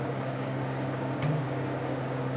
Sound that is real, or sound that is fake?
fake